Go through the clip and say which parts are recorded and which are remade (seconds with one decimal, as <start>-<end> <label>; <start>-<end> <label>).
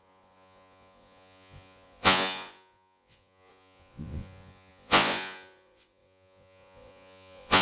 0.0-7.6 remade